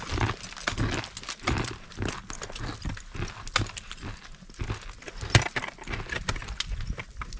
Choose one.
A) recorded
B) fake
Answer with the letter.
A